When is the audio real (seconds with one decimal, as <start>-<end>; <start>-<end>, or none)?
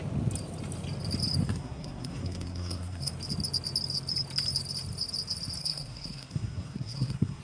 0.0-1.4; 3.1-5.6